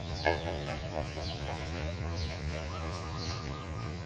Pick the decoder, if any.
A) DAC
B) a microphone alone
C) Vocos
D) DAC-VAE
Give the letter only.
C